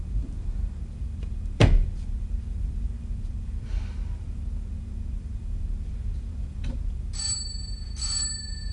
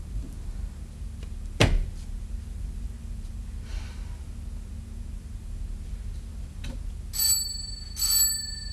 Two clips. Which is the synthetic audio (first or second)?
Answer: first